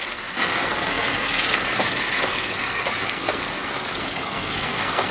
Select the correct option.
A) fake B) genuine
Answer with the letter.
A